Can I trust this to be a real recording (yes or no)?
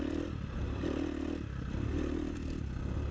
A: yes